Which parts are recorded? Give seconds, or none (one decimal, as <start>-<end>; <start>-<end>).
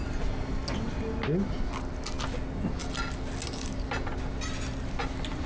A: 0.0-5.5